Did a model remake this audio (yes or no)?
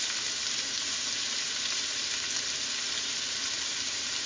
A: no